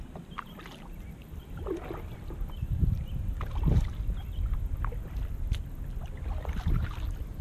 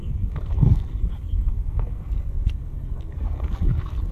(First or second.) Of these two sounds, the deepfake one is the second